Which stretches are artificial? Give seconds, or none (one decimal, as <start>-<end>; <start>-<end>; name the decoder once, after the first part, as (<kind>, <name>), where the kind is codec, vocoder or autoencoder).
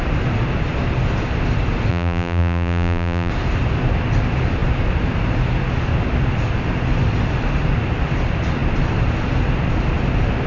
1.9-3.3 (vocoder, BigVGAN v2)